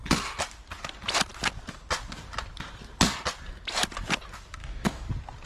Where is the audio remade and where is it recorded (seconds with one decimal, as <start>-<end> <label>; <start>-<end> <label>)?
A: 0.0-4.6 recorded; 4.6-5.1 remade; 5.1-5.5 recorded